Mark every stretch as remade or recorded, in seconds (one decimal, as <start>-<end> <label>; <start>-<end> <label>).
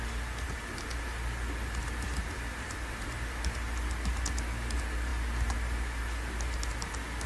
0.0-7.3 recorded